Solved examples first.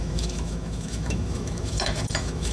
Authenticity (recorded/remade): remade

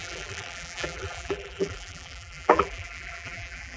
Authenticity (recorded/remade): remade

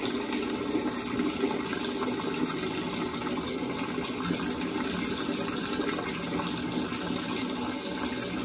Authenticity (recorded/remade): recorded